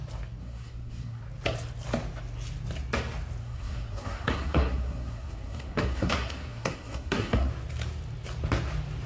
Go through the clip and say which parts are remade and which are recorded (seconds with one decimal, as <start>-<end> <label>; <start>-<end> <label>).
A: 0.0-0.4 recorded; 0.4-1.2 remade; 1.2-3.4 recorded; 3.4-7.5 remade; 7.5-9.1 recorded